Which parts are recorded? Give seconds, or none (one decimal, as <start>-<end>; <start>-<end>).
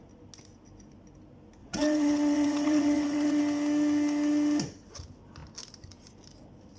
0.0-1.6; 3.4-6.8